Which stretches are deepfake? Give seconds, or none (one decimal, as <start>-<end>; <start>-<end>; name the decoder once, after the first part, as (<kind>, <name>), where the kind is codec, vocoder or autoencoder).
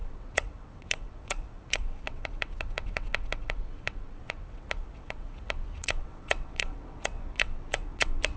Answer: 0.0-8.4 (vocoder, WaveNeXt)